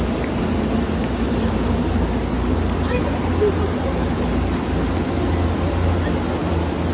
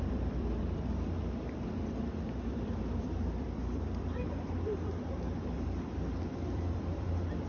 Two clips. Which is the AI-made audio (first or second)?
second